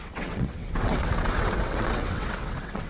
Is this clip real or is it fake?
fake